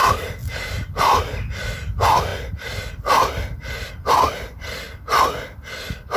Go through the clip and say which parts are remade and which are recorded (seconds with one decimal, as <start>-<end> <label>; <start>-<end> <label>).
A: 0.0-6.2 recorded